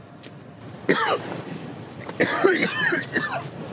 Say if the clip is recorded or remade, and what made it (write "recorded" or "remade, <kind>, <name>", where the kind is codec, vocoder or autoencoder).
remade, vocoder, BigVGAN v2